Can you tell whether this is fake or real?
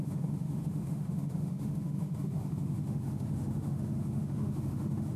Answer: fake